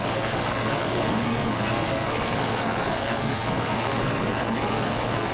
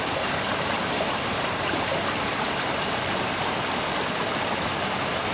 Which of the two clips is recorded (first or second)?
second